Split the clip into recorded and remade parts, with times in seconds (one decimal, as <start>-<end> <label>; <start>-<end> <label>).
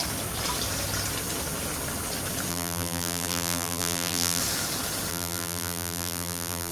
0.0-2.5 recorded; 2.5-4.4 remade; 4.4-5.1 recorded; 5.1-6.7 remade